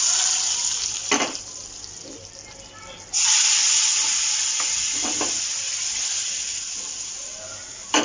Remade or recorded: recorded